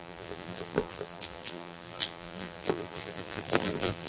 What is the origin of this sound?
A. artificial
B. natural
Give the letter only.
A